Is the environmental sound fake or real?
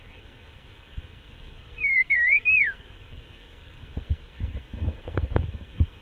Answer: fake